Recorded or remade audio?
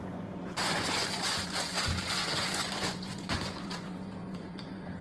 remade